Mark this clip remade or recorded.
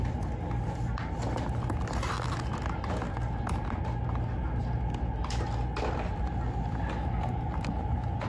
recorded